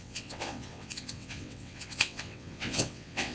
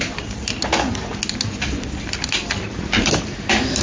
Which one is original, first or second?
second